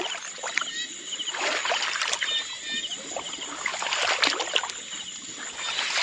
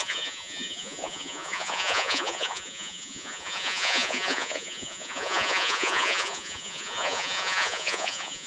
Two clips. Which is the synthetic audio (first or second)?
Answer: second